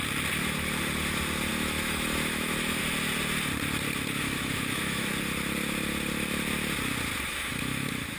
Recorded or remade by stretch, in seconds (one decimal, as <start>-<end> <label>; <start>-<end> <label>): 0.0-1.5 recorded; 1.5-2.8 remade; 2.8-4.2 recorded; 4.2-5.1 remade; 5.1-7.3 recorded; 7.3-8.2 remade